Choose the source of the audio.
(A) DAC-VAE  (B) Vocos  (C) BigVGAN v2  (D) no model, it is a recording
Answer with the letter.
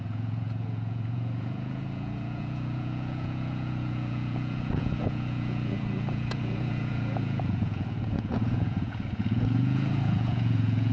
B